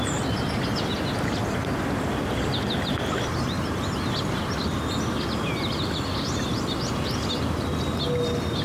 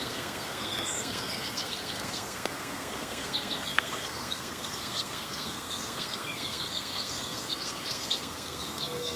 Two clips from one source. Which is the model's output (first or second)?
second